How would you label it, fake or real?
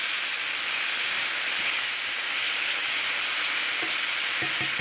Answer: real